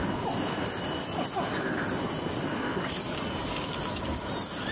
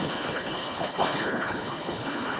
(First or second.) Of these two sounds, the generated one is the second